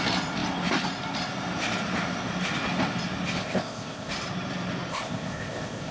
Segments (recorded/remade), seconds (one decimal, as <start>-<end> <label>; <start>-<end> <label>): 0.0-3.4 recorded; 3.4-4.1 remade; 4.1-4.9 recorded; 4.9-5.9 remade